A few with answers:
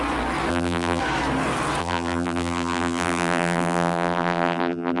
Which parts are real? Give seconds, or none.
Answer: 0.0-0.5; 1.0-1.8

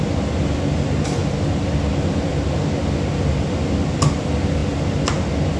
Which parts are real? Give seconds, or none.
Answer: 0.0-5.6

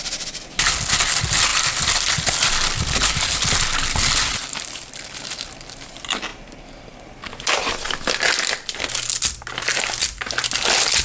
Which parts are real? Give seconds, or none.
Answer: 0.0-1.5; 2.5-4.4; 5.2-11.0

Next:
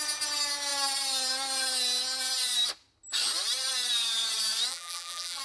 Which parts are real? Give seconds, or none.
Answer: 0.0-4.7

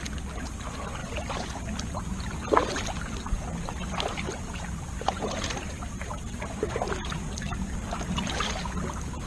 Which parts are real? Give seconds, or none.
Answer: 0.0-1.0; 1.6-4.1; 8.6-9.3

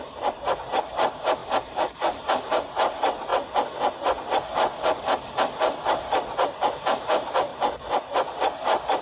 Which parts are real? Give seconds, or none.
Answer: 3.3-5.9; 7.5-9.0

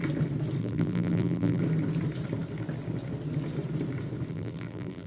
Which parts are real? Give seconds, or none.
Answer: 0.0-0.6; 1.6-4.3

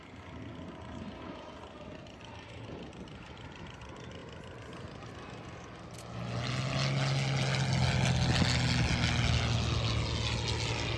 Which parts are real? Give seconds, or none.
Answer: 0.0-2.0; 2.9-4.2; 5.1-11.0